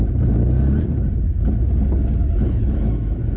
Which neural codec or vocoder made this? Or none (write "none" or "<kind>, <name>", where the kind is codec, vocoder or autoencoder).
none